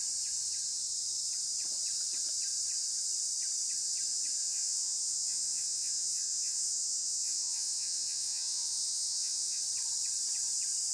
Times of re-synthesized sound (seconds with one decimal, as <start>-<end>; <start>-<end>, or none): 4.4-9.6